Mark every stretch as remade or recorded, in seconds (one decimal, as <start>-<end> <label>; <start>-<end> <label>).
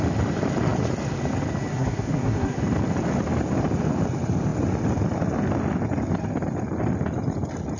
0.0-1.7 recorded; 1.7-2.6 remade; 2.6-7.8 recorded